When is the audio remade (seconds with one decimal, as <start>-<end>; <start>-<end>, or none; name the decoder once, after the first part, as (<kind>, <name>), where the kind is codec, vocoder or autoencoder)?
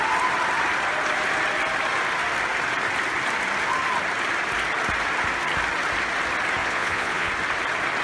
6.6-7.3 (vocoder, Vocos)